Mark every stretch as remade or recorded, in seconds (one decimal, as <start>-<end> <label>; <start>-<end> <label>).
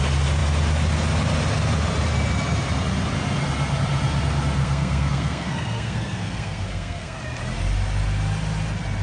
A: 0.0-4.6 recorded; 4.6-7.2 remade; 7.2-9.0 recorded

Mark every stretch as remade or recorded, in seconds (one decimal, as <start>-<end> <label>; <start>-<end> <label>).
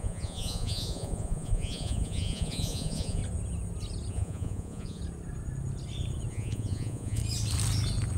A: 0.0-3.2 remade; 3.2-4.1 recorded; 4.1-5.0 remade; 5.0-6.3 recorded; 6.3-7.2 remade; 7.2-8.2 recorded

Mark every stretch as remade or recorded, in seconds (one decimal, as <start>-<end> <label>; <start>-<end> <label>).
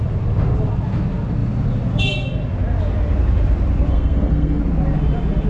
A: 0.0-3.9 recorded; 3.9-4.6 remade; 4.6-5.5 recorded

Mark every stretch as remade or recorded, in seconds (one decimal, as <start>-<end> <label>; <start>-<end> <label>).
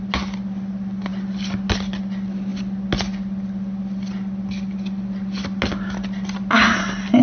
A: 0.0-7.2 recorded